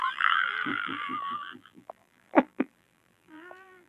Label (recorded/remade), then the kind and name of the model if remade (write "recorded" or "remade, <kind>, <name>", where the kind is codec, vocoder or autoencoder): remade, vocoder, BigVGAN v2